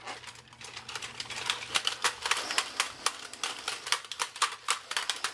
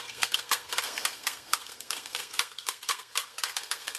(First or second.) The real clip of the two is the first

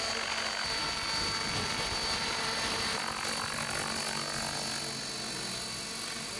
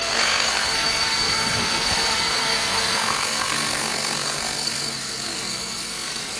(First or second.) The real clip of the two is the first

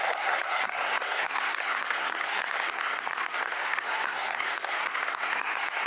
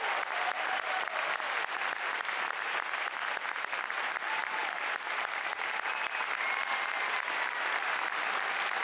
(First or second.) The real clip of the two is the second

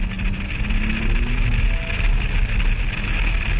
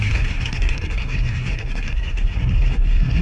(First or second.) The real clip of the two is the first